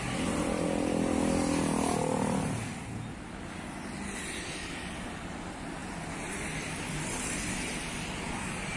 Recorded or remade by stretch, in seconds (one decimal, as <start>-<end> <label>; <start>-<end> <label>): 0.0-8.8 recorded